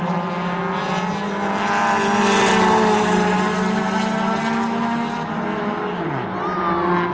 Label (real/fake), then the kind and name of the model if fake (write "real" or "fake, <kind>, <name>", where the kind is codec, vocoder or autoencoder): real